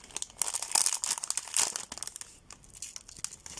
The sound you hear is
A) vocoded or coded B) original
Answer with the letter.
B